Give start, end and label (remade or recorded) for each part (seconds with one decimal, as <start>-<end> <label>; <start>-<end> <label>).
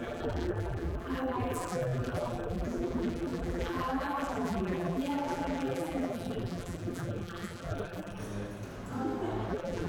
0.0-8.2 remade; 8.2-9.5 recorded; 9.5-9.9 remade